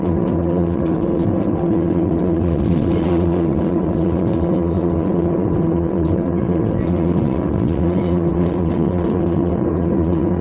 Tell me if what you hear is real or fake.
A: fake